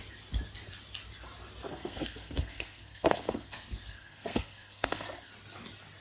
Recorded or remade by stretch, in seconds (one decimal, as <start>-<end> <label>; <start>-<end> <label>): 0.0-1.7 recorded; 1.7-5.3 remade; 5.3-6.0 recorded